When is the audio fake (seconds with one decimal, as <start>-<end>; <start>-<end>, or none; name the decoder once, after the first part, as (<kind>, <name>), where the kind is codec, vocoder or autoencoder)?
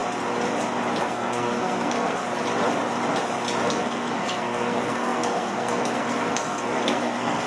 1.0-2.2 (codec, SNAC); 3.7-7.5